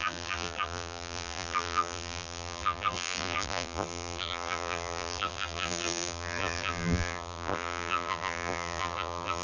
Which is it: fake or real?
fake